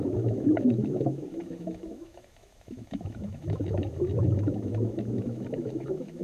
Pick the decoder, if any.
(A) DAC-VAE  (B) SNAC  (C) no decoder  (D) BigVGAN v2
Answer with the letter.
A